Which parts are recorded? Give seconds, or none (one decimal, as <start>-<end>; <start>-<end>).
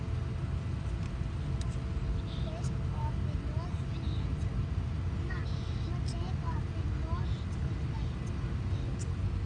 0.0-9.5